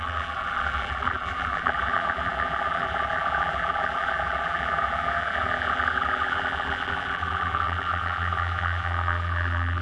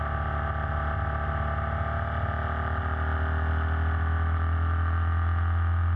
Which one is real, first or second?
second